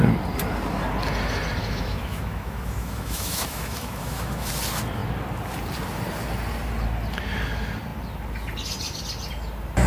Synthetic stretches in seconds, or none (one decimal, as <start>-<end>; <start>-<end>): 1.6-4.5